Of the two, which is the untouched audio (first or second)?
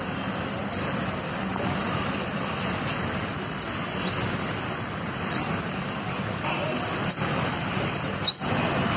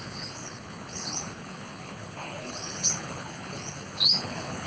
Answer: first